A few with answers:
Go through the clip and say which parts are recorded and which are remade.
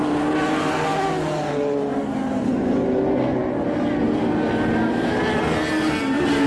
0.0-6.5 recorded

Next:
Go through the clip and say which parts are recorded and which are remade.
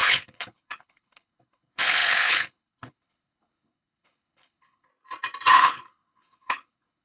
0.0-4.9 remade; 4.9-5.5 recorded; 5.5-7.0 remade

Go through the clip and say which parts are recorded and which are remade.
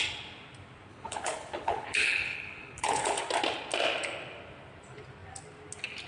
0.0-0.9 recorded; 0.9-3.2 remade; 3.2-6.1 recorded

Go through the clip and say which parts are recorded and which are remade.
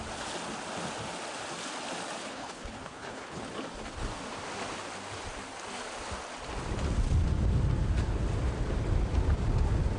0.0-2.2 recorded; 2.2-3.4 remade; 3.4-10.0 recorded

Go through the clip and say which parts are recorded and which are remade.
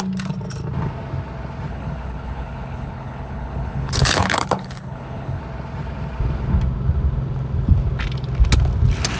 0.0-1.7 recorded; 1.7-5.4 remade; 5.4-9.2 recorded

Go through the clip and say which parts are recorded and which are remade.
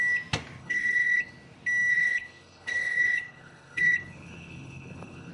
0.0-0.6 recorded; 0.6-1.3 remade; 1.3-1.9 recorded; 1.9-5.3 remade